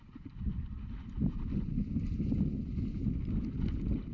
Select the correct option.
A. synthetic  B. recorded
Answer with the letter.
B